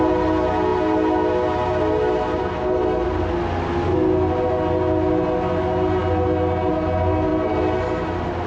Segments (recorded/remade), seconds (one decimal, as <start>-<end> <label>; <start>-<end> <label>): 0.0-8.5 recorded